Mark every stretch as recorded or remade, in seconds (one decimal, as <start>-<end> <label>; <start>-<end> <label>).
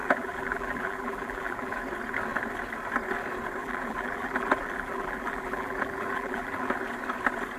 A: 0.0-1.8 remade; 1.8-3.6 recorded; 3.6-6.8 remade; 6.8-7.6 recorded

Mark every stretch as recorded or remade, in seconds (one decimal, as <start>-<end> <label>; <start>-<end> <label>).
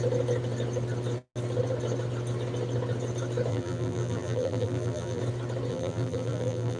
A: 0.0-3.5 recorded; 3.5-5.2 remade; 5.2-5.7 recorded; 5.7-6.8 remade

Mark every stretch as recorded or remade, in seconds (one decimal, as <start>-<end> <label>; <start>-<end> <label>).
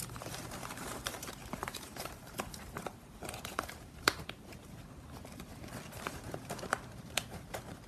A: 0.0-5.5 remade; 5.5-6.1 recorded; 6.1-7.9 remade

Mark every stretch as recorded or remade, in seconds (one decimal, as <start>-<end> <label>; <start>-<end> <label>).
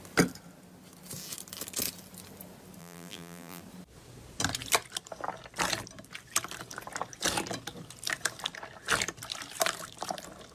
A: 0.0-2.8 recorded; 2.8-3.6 remade; 3.6-10.5 recorded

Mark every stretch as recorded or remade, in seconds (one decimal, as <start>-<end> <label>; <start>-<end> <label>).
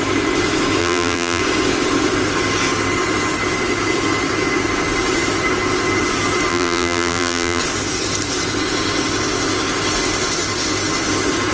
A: 0.0-0.8 recorded; 0.8-1.4 remade; 1.4-6.5 recorded; 6.5-7.6 remade; 7.6-11.5 recorded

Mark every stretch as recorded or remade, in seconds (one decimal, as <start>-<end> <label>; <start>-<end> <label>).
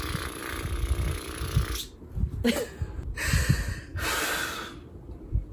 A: 0.0-5.5 recorded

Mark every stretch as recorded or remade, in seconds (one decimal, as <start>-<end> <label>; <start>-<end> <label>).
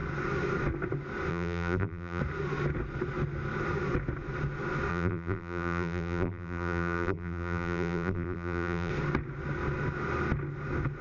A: 0.0-1.3 recorded; 1.3-2.2 remade; 2.2-4.9 recorded; 4.9-8.9 remade; 8.9-11.0 recorded